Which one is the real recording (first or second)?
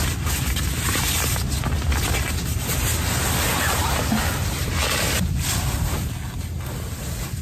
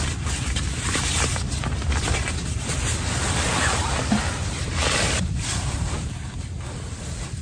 first